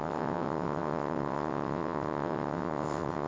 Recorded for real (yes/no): no